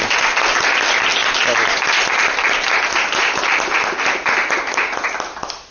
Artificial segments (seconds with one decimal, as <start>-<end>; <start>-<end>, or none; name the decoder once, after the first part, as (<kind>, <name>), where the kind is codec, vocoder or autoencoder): none

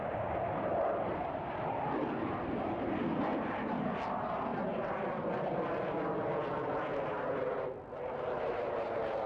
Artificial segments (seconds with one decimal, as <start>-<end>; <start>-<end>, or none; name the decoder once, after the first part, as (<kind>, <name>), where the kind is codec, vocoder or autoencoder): 4.5-5.2 (vocoder, BigVGAN v2)

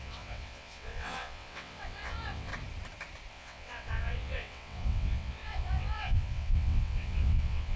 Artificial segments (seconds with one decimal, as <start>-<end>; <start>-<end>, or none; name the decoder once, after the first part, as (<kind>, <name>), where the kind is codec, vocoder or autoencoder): 0.0-2.5 (vocoder, WaveNeXt); 3.3-7.8